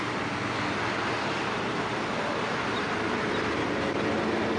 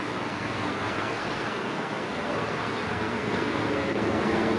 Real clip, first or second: first